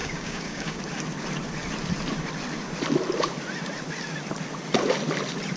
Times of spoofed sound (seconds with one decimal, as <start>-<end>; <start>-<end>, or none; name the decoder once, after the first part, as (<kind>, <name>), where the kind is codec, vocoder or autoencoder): 0.0-0.8 (codec, DAC)